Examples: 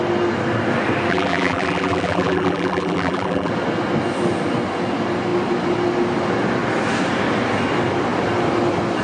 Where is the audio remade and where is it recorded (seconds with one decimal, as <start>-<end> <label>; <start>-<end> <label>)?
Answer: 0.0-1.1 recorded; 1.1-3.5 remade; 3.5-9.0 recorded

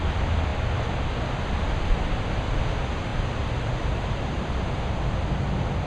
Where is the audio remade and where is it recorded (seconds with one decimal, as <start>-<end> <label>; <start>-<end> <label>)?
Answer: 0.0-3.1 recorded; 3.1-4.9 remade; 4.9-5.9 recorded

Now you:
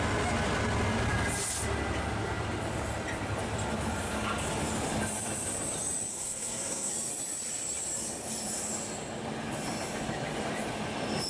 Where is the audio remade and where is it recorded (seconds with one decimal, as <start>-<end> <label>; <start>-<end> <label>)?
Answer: 0.0-6.1 recorded; 6.1-6.9 remade; 6.9-11.3 recorded

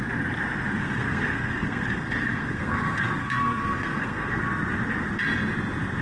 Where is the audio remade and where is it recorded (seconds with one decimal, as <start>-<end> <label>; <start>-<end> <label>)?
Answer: 0.0-0.8 recorded; 0.8-4.4 remade; 4.4-6.0 recorded

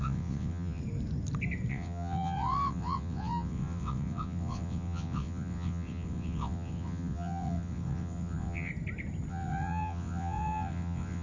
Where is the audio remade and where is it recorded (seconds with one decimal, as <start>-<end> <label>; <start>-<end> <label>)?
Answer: 0.0-0.8 remade; 0.8-1.7 recorded; 1.7-8.7 remade; 8.7-9.3 recorded; 9.3-11.2 remade

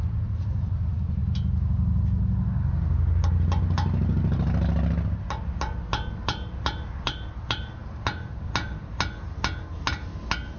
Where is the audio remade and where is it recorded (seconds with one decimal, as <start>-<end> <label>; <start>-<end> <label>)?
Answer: 0.0-10.6 recorded

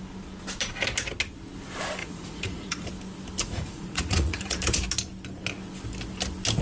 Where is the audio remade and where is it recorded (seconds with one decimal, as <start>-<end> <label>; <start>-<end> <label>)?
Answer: 0.0-2.0 recorded; 2.0-2.9 remade; 2.9-3.4 recorded; 3.4-4.6 remade; 4.6-6.6 recorded

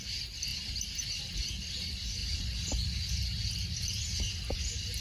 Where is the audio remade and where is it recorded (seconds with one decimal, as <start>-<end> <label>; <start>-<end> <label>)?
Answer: 0.0-0.5 recorded; 0.5-1.2 remade; 1.2-5.0 recorded